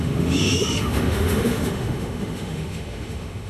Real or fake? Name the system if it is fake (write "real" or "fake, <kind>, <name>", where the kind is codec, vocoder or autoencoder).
fake, autoencoder, DAC-VAE